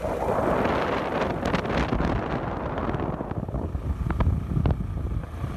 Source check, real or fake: real